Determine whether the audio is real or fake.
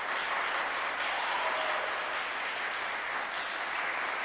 real